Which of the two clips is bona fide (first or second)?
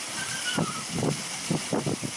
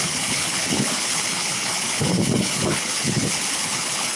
first